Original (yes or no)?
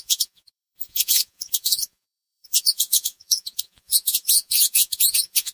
no